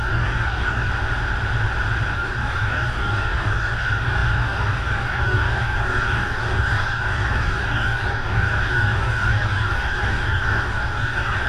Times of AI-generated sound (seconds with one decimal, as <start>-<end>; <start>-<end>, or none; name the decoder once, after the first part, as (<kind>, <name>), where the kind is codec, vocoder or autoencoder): 0.0-0.9 (codec, DAC); 2.1-11.5